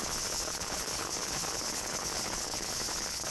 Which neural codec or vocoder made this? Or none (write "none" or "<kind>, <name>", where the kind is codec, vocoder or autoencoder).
codec, HILCodec